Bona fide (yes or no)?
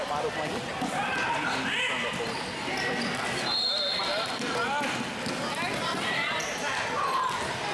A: yes